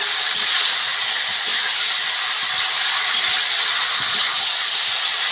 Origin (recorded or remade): recorded